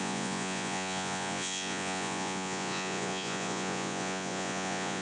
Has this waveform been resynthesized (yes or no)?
yes